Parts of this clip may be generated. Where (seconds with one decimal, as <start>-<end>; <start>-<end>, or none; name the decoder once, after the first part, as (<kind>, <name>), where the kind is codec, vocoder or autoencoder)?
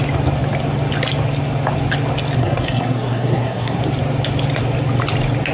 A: 2.4-3.8 (codec, SNAC)